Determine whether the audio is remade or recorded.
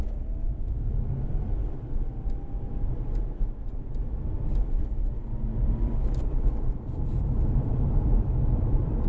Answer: remade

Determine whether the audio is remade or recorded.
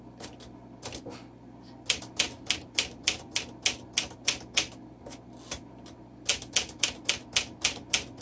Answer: recorded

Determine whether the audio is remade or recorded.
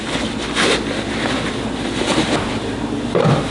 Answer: recorded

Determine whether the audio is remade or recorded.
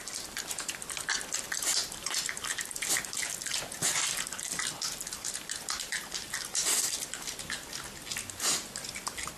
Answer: recorded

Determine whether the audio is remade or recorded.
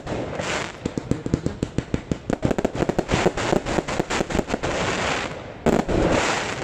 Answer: recorded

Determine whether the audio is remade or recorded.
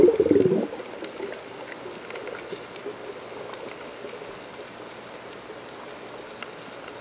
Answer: recorded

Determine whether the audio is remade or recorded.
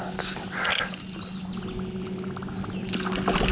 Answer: recorded